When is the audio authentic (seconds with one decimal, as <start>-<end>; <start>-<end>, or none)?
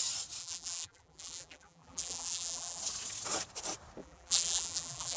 0.0-0.4; 2.8-4.0